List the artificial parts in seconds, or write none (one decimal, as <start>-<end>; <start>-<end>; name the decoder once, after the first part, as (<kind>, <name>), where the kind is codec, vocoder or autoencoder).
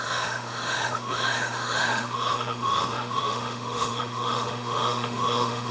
0.0-5.7 (autoencoder, DAC-VAE)